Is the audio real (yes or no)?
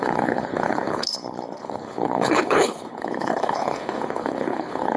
no